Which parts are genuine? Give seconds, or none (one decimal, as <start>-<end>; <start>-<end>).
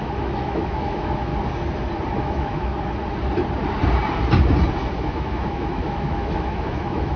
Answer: 1.3-2.2; 2.7-5.0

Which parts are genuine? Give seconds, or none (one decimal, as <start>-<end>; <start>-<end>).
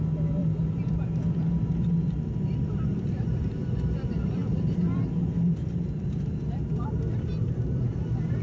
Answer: none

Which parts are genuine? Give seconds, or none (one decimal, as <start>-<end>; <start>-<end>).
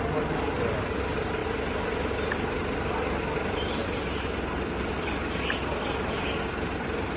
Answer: 0.0-7.2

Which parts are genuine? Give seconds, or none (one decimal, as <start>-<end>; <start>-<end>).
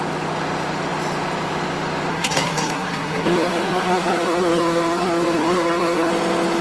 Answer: 0.0-2.1; 6.1-6.6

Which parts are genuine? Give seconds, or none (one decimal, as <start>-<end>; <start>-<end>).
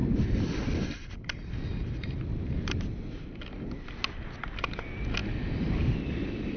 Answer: 0.0-6.6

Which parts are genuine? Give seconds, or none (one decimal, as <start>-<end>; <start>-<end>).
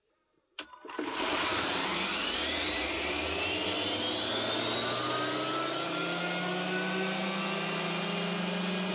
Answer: 0.0-1.5; 4.0-8.9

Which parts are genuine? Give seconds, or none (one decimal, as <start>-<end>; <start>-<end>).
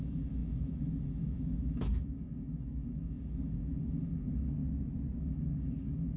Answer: 4.6-5.2